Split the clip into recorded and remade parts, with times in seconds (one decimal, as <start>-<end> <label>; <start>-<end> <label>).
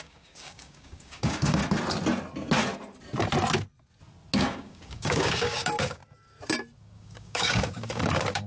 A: 0.0-1.6 remade; 1.6-4.4 recorded; 4.4-6.0 remade; 6.0-6.8 recorded; 6.8-8.5 remade